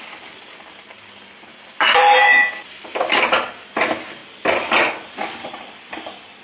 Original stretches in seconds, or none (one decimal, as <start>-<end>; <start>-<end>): 0.0-1.5; 2.5-6.4